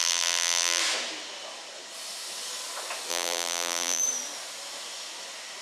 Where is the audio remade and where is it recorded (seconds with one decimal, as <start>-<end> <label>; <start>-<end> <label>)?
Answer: 0.0-0.8 remade; 0.8-3.1 recorded; 3.1-4.0 remade; 4.0-5.6 recorded